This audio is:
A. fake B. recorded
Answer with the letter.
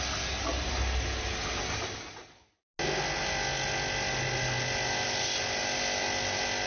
B